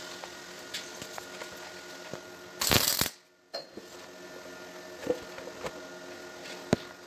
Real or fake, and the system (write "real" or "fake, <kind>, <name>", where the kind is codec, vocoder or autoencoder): real